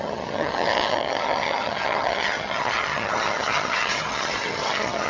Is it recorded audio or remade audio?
remade